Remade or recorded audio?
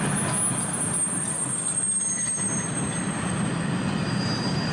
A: recorded